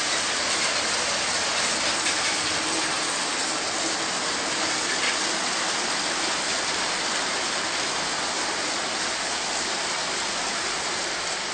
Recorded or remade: recorded